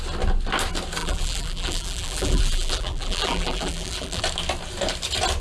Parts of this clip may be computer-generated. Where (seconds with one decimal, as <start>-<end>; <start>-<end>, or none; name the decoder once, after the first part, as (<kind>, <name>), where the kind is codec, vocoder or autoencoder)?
1.0-4.2 (vocoder, BigVGAN v2)